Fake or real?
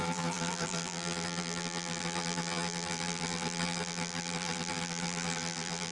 fake